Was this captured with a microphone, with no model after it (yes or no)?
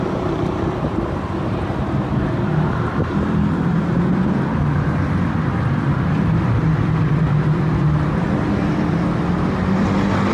no